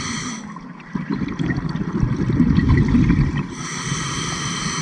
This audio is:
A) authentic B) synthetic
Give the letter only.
A